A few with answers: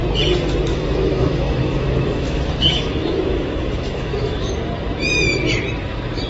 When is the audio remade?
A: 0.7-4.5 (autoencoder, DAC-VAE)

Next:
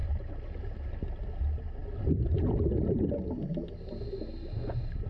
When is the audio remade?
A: none

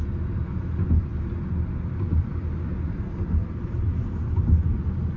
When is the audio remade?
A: none

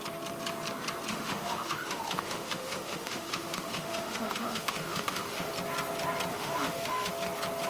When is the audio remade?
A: 1.1-5.5 (autoencoder, DAC-VAE); 6.3-7.1